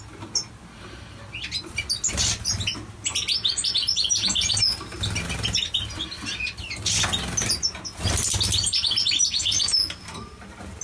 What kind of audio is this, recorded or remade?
recorded